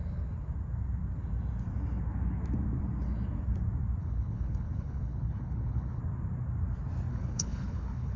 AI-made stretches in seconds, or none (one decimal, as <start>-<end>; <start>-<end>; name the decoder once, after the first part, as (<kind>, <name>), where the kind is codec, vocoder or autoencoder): 4.0-6.0 (codec, HILCodec); 7.1-8.2